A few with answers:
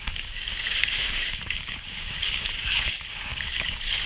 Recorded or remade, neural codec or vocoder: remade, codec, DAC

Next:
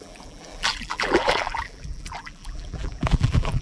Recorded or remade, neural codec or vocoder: remade, vocoder, BigVGAN v2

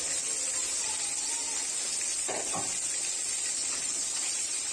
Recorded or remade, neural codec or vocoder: recorded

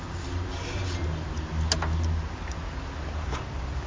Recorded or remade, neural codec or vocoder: recorded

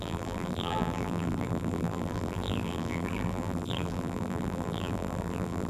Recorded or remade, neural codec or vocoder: remade, vocoder, BigVGAN v2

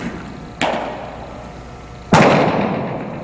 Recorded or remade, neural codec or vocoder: recorded